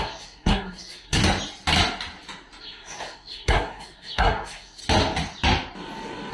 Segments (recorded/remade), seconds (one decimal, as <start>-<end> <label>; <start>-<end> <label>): 0.0-1.2 remade; 1.2-2.6 recorded; 2.6-4.8 remade; 4.8-6.3 recorded